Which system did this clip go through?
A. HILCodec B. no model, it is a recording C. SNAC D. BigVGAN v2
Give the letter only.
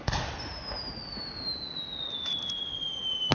B